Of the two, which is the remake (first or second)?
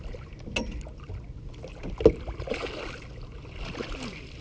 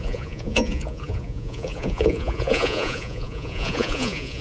second